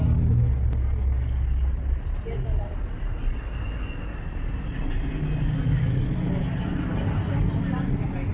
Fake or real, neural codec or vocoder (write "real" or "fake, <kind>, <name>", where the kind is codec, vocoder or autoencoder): real